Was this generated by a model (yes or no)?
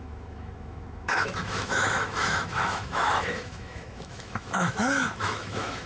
yes